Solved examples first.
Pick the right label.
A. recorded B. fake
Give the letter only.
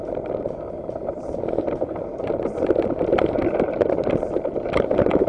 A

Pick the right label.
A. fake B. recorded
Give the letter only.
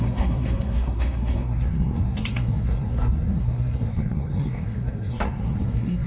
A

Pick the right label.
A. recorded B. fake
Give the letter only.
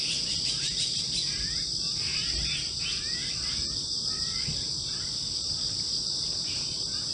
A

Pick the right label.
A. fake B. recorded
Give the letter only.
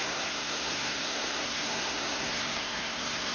A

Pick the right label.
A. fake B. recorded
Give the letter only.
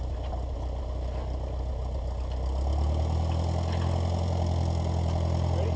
B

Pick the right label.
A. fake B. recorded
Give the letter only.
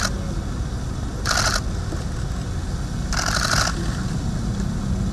B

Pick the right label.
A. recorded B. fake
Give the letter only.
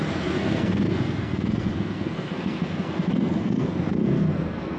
B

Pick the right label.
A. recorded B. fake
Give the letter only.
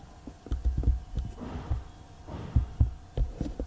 A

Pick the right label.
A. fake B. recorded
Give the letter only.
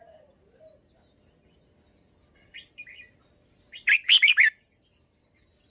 B